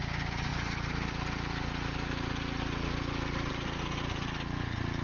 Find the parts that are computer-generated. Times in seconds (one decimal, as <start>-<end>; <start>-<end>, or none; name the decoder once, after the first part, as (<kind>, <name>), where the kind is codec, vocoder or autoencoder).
none